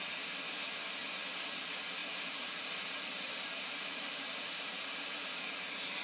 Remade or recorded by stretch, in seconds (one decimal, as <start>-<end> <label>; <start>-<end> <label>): 0.0-2.0 recorded; 2.0-5.6 remade; 5.6-6.0 recorded